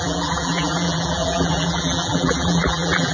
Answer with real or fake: fake